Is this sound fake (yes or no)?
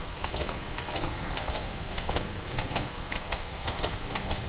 yes